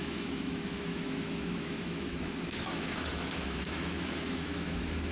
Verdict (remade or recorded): remade